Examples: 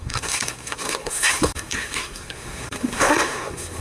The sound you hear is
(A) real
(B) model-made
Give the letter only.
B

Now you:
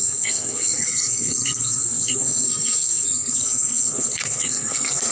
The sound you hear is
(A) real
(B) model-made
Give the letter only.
B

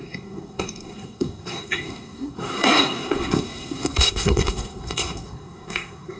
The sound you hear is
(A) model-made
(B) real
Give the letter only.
A